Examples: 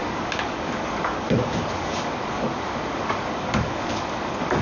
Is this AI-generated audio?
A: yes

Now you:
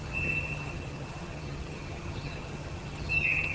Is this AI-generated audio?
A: yes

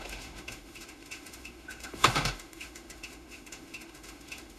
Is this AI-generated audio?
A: yes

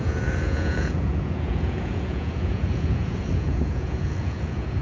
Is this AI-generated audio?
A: yes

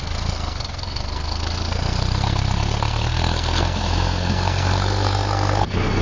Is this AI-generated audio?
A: yes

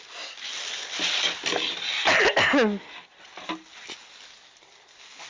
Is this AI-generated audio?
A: no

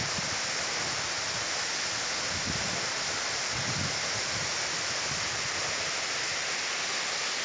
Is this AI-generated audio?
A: no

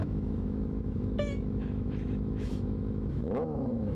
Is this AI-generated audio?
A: yes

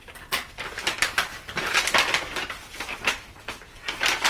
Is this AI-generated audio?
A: no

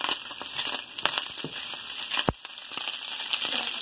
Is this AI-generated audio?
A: no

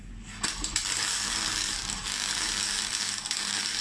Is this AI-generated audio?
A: yes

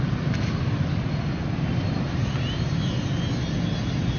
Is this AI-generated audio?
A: no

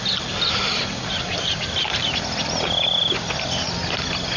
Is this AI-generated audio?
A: no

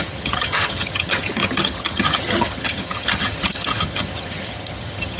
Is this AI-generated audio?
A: yes